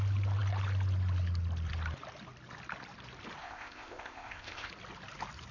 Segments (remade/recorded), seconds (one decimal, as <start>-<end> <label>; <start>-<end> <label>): 0.0-3.4 recorded; 3.4-4.7 remade; 4.7-5.5 recorded